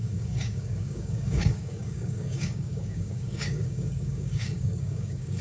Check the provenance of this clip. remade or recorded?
remade